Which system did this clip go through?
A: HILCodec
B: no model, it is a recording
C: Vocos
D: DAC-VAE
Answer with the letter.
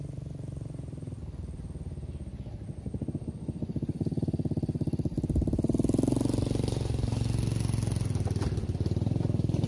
B